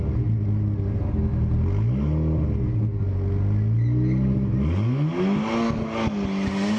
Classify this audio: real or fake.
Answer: real